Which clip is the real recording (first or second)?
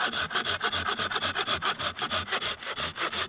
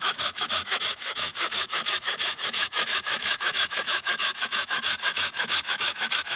first